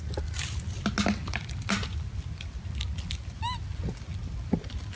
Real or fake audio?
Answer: real